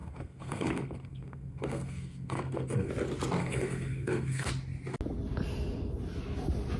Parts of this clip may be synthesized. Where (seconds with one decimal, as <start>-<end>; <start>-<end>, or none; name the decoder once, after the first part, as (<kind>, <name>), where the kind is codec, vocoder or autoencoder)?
0.0-2.9 (codec, SNAC); 3.4-4.5